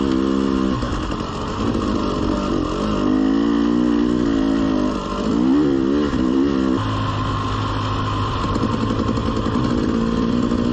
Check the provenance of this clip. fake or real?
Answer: real